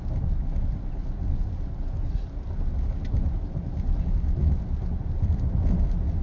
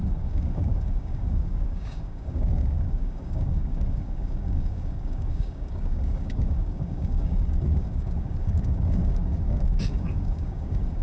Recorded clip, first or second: first